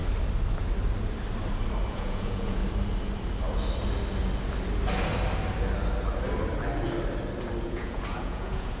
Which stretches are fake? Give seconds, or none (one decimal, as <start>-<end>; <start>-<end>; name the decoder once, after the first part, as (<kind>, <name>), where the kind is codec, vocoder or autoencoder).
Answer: 1.9-2.6 (vocoder, Vocos); 7.6-8.8